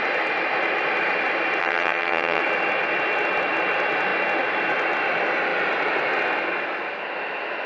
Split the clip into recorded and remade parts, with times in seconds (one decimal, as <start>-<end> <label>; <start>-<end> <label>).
0.0-1.6 recorded; 1.6-2.4 remade; 2.4-7.7 recorded